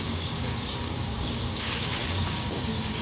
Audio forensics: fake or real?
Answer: fake